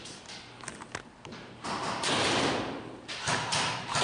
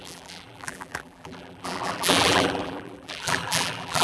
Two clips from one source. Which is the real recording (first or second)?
first